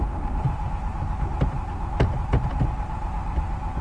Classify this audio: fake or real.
fake